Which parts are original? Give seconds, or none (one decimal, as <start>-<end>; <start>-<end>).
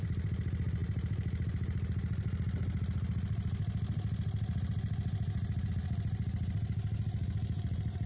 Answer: 0.0-8.1